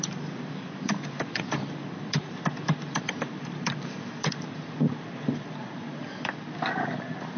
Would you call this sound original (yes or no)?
no